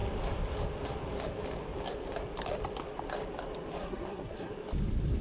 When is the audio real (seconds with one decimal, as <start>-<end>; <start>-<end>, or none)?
0.0-3.8; 4.5-5.2